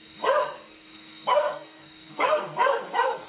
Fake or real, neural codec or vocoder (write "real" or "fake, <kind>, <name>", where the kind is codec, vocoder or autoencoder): fake, codec, SNAC